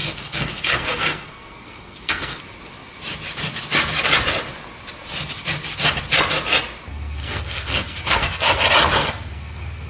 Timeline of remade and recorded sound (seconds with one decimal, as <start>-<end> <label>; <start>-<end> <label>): 0.0-2.4 remade; 2.4-6.9 recorded; 6.9-8.6 remade; 8.6-9.0 recorded; 9.0-9.9 remade